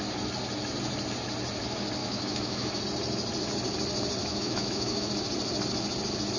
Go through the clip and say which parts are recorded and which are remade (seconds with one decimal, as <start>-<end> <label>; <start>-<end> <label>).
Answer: 0.0-2.0 recorded; 2.0-2.8 remade; 2.8-4.2 recorded; 4.2-5.1 remade; 5.1-6.4 recorded